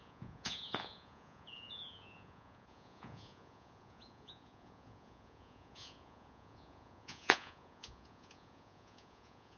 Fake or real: fake